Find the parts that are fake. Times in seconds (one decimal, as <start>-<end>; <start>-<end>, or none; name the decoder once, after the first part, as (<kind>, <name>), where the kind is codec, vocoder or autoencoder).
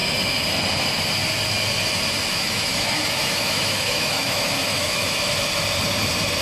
2.3-5.3 (autoencoder, DAC-VAE)